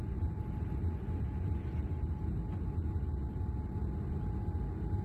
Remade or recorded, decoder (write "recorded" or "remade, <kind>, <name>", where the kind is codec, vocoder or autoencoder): recorded